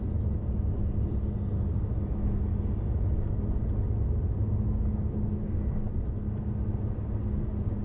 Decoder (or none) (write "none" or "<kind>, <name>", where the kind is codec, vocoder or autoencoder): none